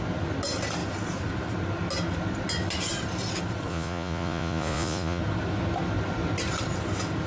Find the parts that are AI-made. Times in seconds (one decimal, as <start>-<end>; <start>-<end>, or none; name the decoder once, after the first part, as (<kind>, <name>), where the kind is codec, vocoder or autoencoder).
3.7-5.2 (vocoder, Vocos)